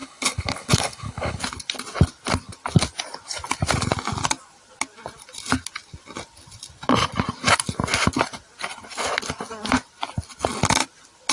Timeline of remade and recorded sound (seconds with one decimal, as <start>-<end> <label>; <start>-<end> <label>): 0.0-1.4 remade; 1.4-11.3 recorded